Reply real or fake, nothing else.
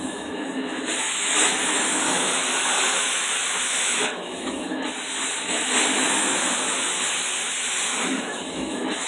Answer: fake